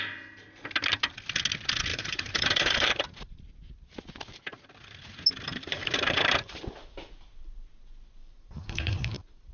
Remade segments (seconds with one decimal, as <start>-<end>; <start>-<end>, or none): 1.9-3.4; 5.5-7.1; 8.2-9.5